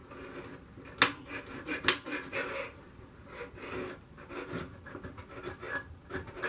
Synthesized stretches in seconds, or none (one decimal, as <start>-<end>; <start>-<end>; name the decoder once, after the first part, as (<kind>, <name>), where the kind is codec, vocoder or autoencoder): none